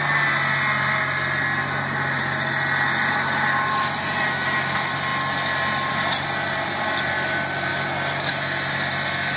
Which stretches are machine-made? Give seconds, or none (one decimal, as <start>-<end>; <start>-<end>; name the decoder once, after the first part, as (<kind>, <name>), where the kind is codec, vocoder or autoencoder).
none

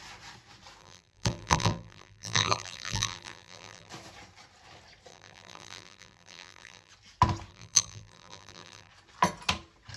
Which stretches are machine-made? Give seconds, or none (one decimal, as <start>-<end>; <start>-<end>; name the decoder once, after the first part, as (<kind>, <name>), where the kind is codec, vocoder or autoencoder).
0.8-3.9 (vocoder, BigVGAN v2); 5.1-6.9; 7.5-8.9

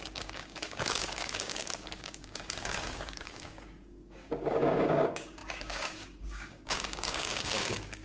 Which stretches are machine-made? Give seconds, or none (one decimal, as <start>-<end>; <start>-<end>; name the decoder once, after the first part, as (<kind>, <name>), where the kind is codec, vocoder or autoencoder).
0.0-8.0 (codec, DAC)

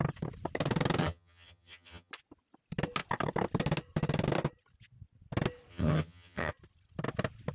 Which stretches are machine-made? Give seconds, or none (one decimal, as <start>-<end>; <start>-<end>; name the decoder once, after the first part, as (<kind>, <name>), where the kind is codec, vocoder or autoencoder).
1.0-2.1 (vocoder, HiFi-GAN); 5.7-6.5

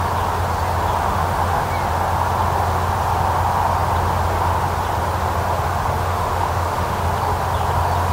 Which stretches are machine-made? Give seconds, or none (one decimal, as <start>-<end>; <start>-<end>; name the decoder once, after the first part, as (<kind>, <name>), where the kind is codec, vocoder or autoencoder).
1.0-1.7 (autoencoder, DAC-VAE); 6.1-7.0

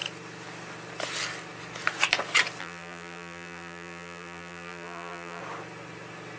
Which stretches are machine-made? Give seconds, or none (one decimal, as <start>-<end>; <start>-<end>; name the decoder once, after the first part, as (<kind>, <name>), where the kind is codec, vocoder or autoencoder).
2.6-5.4 (vocoder, BigVGAN v2)

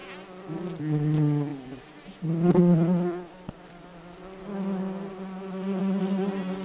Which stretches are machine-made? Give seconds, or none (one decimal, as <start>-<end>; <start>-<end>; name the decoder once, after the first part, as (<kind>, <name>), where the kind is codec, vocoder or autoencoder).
none

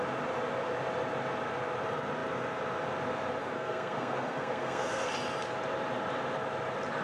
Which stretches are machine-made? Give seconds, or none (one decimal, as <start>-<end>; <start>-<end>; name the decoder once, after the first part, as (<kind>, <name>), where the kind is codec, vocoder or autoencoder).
3.4-5.1 (codec, SNAC)